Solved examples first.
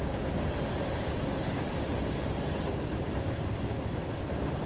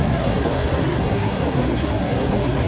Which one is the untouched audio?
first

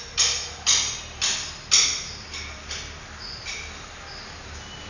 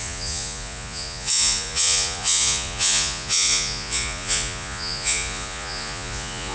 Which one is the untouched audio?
first